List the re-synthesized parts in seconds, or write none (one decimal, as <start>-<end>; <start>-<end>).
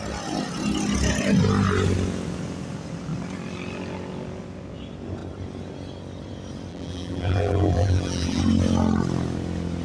6.7-8.4